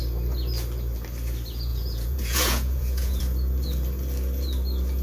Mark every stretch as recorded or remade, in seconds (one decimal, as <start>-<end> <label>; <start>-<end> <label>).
0.0-1.7 recorded; 1.7-3.2 remade; 3.2-5.0 recorded